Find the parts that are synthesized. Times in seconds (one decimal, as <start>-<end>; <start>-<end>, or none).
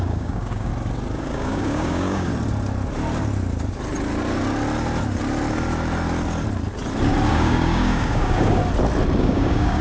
0.0-0.7; 1.2-2.3; 7.3-8.6; 9.2-9.8